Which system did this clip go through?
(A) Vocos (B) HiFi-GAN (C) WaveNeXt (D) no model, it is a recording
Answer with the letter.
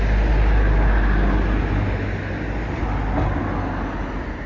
D